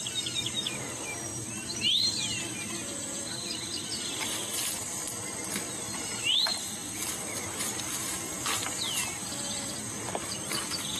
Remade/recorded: remade